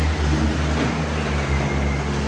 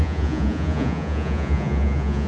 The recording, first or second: first